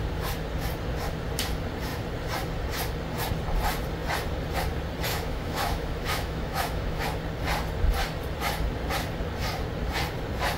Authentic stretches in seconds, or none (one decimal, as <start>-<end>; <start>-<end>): 0.0-5.1; 7.0-10.6